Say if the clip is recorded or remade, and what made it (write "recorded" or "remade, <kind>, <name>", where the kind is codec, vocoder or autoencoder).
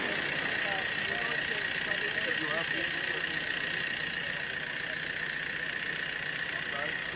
recorded